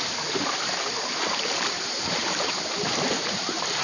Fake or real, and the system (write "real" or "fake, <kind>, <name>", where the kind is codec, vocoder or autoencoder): fake, vocoder, BigVGAN v2